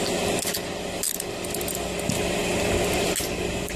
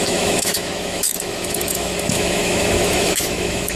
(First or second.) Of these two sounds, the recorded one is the first